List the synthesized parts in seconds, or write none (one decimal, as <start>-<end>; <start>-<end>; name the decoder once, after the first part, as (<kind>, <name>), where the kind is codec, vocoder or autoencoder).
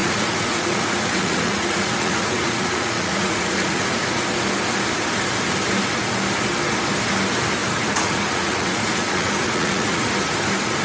0.0-4.0 (vocoder, Vocos); 7.6-10.1